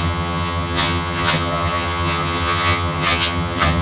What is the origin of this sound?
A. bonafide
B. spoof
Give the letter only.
B